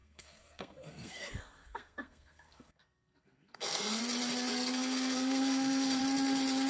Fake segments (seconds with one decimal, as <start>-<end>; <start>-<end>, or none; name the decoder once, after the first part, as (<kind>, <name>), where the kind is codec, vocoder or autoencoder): 0.0-4.0 (codec, SNAC); 4.5-6.0